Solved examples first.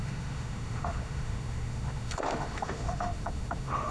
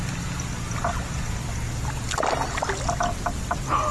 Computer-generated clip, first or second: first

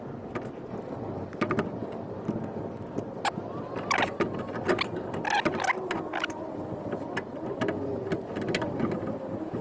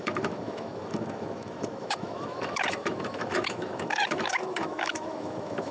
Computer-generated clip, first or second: second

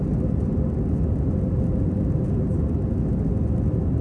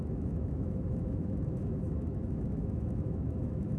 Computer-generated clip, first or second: second